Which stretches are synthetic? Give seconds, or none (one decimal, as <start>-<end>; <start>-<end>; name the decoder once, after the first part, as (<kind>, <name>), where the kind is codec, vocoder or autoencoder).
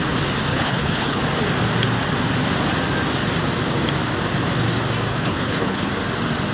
0.5-1.2 (codec, HILCodec); 5.1-5.9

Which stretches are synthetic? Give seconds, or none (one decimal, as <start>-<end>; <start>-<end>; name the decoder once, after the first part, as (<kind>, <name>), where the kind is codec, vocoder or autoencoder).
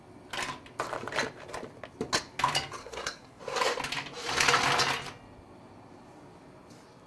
2.8-3.4 (codec, SNAC)